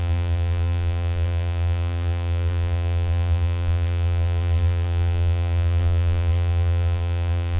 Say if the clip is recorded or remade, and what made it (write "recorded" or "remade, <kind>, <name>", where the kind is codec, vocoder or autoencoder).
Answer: remade, vocoder, BigVGAN v2